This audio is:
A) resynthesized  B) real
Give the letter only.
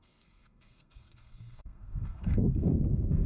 A